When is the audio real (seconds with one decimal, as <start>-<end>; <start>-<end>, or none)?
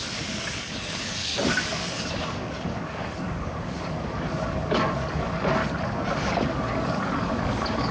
5.6-6.1